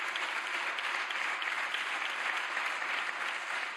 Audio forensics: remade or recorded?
recorded